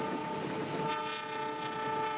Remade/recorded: recorded